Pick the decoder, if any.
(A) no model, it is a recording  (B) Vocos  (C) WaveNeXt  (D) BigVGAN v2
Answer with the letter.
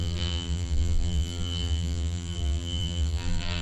D